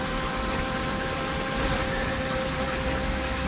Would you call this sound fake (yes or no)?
no